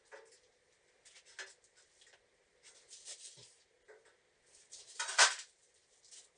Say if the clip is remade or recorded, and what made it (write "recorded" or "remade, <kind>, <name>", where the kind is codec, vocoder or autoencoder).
recorded